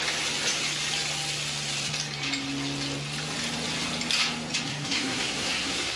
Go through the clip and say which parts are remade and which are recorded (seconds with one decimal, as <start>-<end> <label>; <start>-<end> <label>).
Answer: 0.0-4.7 recorded; 4.7-6.0 remade